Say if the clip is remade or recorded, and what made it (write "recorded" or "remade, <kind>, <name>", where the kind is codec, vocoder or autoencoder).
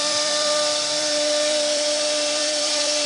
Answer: remade, vocoder, BigVGAN v2